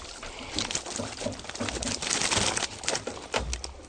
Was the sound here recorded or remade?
recorded